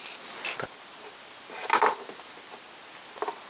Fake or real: real